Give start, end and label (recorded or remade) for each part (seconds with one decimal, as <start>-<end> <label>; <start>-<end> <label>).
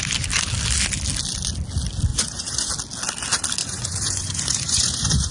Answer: 0.0-2.1 recorded; 2.1-2.7 remade; 2.7-3.6 recorded; 3.6-5.3 remade